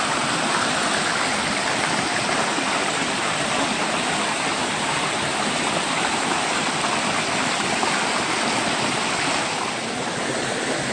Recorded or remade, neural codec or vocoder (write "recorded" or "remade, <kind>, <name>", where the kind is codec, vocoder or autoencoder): recorded